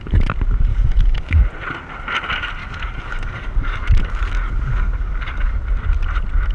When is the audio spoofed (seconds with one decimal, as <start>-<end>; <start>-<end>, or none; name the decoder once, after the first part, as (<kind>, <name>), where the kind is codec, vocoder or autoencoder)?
0.7-1.4 (codec, DAC); 2.6-5.6